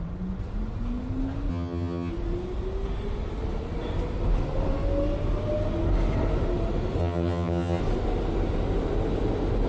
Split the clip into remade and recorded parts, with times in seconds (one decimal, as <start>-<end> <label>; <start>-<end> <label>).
0.0-1.5 recorded; 1.5-2.1 remade; 2.1-7.0 recorded; 7.0-7.8 remade; 7.8-9.7 recorded